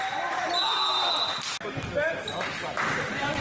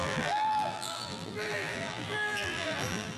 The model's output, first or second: second